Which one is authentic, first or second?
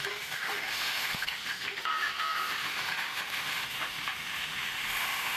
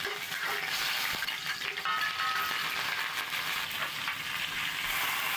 second